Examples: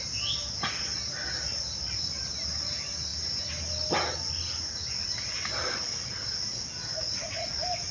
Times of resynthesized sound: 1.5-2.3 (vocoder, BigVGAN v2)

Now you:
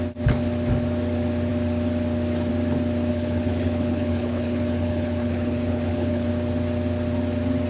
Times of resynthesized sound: 3.1-6.3 (codec, HILCodec)

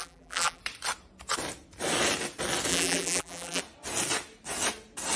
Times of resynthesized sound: 0.0-0.6 (vocoder, BigVGAN v2); 2.7-3.6

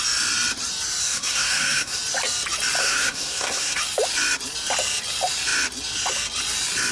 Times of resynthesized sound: 1.0-2.0 (codec, SNAC); 2.8-3.8

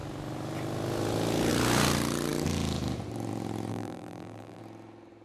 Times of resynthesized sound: 3.7-4.6 (vocoder, BigVGAN v2)